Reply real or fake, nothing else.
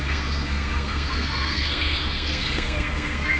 fake